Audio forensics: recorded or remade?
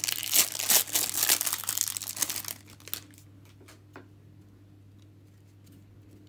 recorded